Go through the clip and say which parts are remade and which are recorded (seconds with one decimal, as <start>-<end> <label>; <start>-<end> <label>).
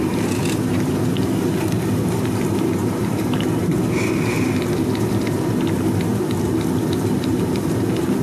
0.0-8.2 recorded